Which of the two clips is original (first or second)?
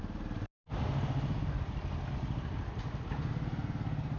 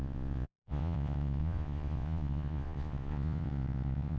first